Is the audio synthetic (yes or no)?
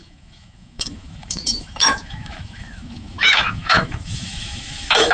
yes